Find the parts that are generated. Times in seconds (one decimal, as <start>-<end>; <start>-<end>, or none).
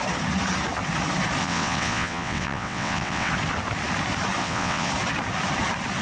1.4-3.3; 4.4-4.9